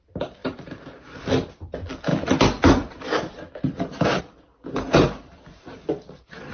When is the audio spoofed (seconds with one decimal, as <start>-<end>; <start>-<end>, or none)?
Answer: none